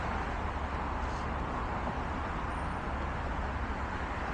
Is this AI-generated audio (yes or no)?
no